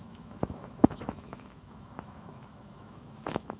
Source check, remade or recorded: remade